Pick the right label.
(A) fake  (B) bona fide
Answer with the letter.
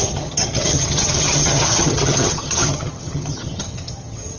A